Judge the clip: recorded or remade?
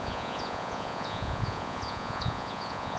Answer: remade